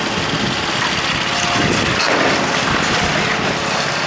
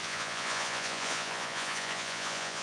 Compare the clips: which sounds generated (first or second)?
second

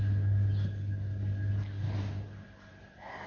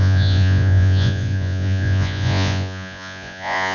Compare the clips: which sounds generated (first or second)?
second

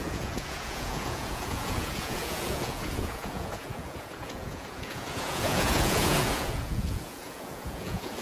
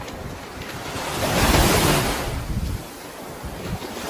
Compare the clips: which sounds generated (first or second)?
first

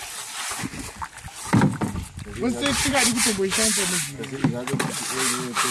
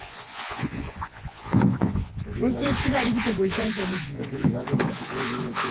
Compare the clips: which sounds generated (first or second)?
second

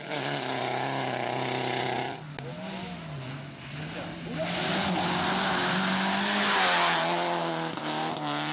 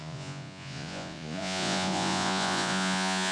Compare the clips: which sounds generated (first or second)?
second